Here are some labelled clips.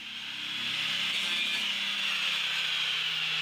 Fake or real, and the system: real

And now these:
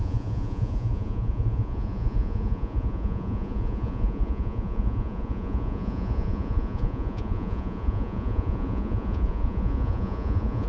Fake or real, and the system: fake, vocoder, Vocos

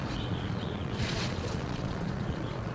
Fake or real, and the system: fake, vocoder, Vocos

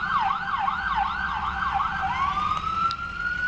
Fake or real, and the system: real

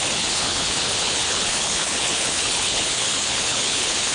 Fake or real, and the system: fake, codec, HILCodec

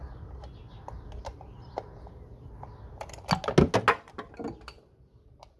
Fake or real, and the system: real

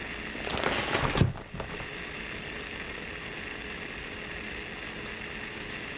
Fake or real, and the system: real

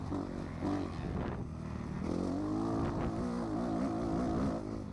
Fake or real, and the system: real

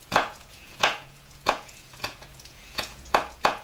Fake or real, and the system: fake, vocoder, Vocos